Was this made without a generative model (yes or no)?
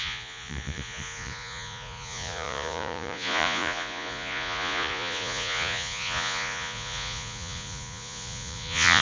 no